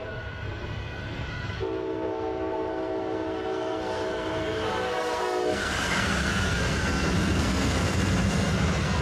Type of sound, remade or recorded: remade